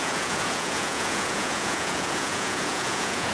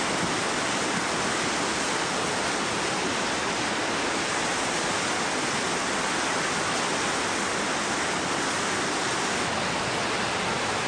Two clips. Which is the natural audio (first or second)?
second